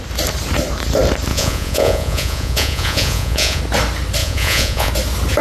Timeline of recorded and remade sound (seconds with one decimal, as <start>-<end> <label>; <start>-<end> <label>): 0.0-1.3 recorded; 1.3-3.6 remade; 3.6-4.2 recorded; 4.2-4.9 remade; 4.9-5.4 recorded